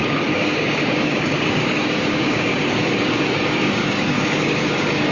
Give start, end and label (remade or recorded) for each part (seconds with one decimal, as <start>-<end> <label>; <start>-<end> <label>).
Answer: 0.0-5.1 remade